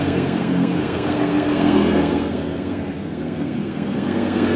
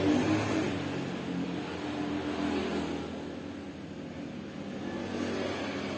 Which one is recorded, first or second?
second